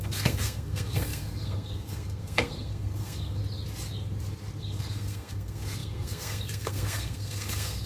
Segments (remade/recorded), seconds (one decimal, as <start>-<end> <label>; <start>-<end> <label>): 0.0-3.4 remade; 3.4-4.6 recorded; 4.6-7.9 remade